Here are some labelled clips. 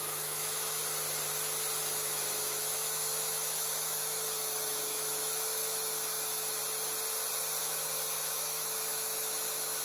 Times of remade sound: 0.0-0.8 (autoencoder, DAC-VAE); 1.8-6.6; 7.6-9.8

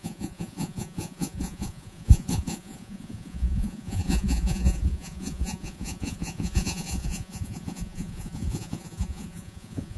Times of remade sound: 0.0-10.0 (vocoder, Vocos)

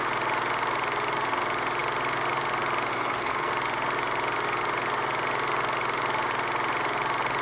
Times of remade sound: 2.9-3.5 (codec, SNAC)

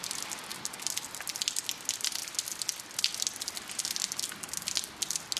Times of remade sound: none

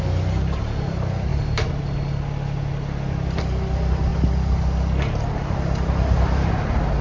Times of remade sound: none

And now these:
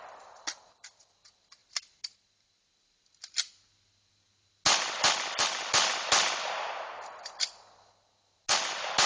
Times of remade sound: none